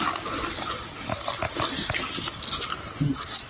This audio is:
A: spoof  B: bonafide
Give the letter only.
B